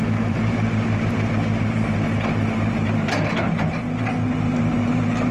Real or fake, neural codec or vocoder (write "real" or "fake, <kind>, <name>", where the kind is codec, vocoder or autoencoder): fake, vocoder, BigVGAN v2